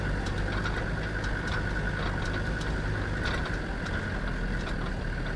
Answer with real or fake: real